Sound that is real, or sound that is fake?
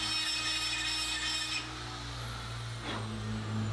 real